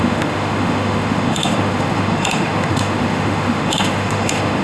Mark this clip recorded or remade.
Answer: remade